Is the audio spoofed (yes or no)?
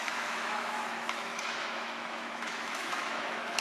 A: yes